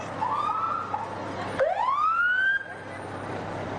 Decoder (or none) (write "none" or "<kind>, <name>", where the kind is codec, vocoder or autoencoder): none